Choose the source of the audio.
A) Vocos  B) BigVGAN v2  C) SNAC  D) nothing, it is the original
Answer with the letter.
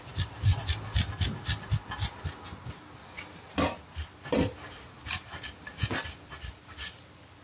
D